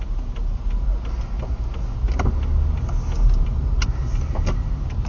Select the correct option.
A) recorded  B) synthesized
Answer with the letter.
A